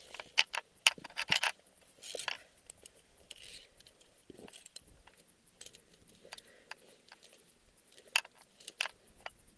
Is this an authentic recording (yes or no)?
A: yes